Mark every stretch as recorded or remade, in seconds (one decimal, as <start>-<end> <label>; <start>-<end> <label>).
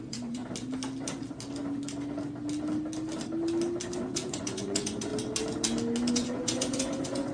0.0-0.4 remade; 0.4-4.0 recorded; 4.0-5.1 remade; 5.1-6.1 recorded; 6.1-7.3 remade